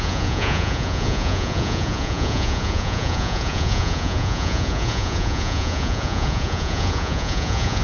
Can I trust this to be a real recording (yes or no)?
no